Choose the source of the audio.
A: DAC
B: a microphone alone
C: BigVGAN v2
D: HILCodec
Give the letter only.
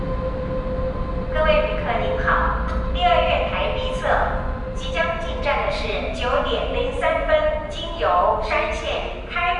B